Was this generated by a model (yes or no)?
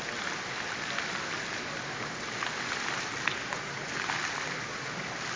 no